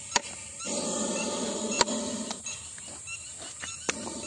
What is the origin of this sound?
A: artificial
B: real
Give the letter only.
B